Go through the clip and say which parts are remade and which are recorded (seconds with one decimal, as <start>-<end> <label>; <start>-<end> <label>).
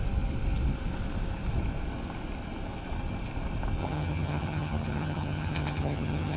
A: 0.0-3.8 recorded; 3.8-6.4 remade